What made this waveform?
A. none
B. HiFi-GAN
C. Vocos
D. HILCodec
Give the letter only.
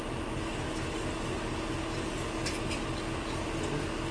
A